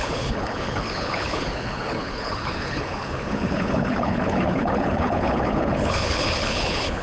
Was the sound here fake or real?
fake